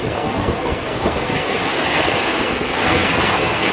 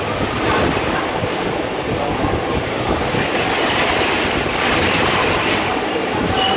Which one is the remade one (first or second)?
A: first